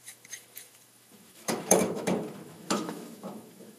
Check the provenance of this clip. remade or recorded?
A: remade